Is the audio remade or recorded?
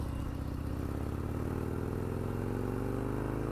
recorded